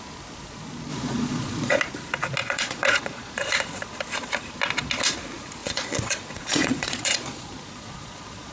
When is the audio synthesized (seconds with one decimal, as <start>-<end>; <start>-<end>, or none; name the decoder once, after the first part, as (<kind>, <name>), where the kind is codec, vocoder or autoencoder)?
0.9-1.8 (vocoder, Vocos); 2.4-3.5; 5.6-8.5